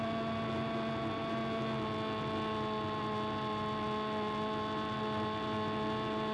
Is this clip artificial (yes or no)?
no